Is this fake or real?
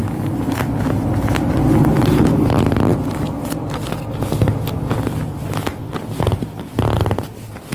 real